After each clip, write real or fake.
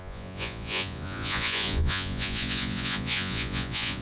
fake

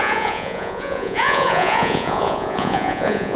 fake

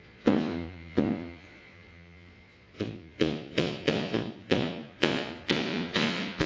fake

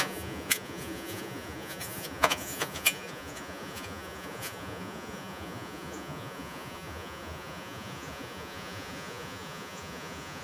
fake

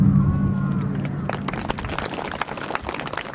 real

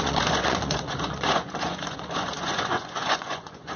fake